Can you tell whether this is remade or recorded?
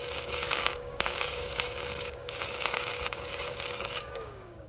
remade